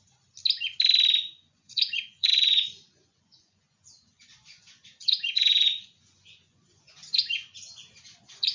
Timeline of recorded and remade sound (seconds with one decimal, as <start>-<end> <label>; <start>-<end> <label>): 0.0-1.3 recorded; 1.3-8.5 remade